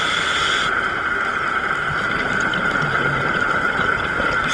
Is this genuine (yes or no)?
no